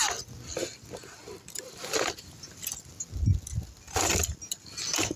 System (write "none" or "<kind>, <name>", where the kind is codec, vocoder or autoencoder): none